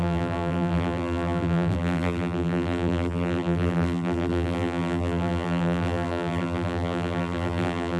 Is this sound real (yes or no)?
no